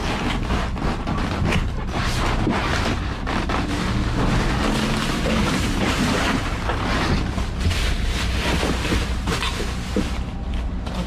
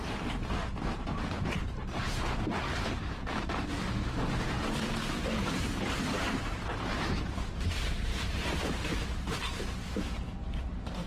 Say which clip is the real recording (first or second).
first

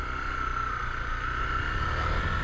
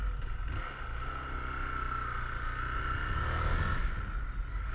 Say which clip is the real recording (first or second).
second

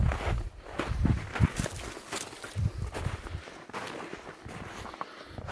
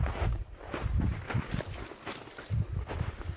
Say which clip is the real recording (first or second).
first